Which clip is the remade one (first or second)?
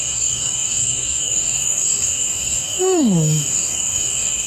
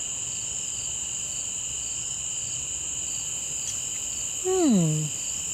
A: first